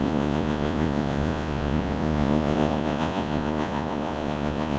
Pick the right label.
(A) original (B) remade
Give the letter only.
B